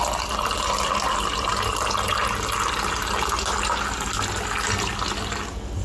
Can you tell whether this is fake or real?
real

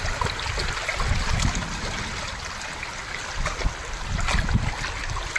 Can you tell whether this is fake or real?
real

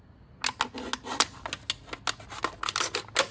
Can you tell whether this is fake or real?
real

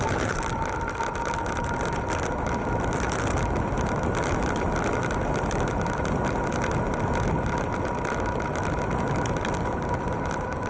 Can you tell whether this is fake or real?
real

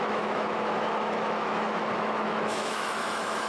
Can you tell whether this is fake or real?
fake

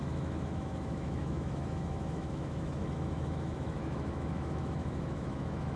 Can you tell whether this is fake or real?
fake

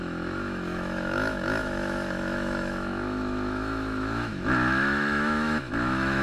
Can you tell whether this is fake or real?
fake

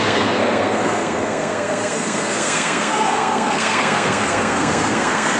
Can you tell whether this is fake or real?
fake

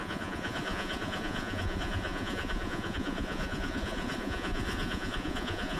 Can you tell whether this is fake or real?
fake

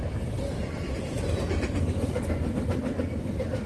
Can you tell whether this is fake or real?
real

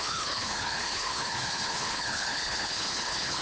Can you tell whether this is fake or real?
fake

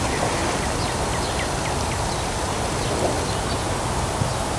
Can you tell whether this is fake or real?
real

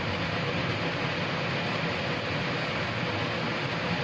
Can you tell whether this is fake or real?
real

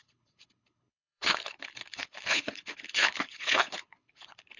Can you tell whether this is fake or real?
fake